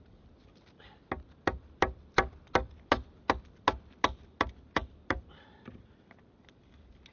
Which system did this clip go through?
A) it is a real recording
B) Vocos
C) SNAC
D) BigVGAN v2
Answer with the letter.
A